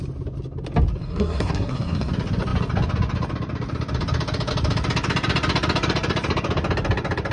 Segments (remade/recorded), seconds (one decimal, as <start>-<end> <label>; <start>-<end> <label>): 0.0-1.0 recorded; 1.0-2.1 remade; 2.1-7.3 recorded